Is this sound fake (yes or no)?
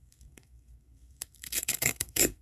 yes